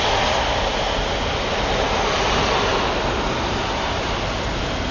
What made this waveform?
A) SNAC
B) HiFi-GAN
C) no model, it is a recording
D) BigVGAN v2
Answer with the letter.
C